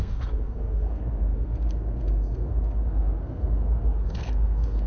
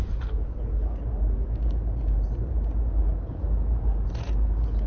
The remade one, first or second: first